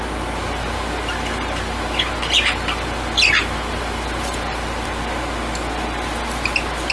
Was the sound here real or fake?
real